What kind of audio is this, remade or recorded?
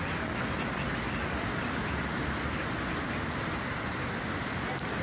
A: recorded